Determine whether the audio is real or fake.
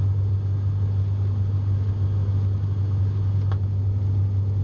real